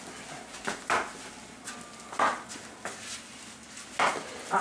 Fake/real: real